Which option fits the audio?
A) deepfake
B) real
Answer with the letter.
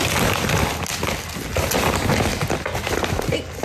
B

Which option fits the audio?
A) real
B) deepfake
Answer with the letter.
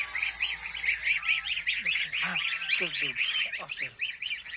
A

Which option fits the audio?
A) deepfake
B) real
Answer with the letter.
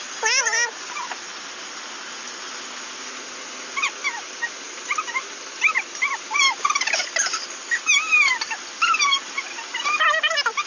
B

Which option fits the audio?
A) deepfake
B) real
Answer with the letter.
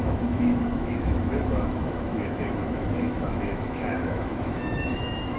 A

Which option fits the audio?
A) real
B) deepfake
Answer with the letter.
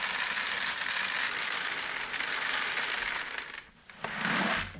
A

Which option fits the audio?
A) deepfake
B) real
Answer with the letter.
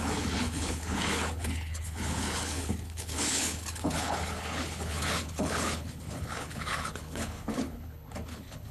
A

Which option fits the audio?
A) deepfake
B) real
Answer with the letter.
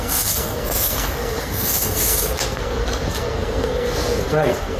A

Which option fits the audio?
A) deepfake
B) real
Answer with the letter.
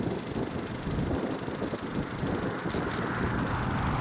B